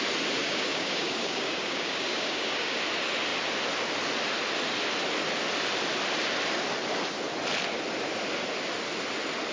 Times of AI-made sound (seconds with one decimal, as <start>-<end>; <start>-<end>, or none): 0.4-2.8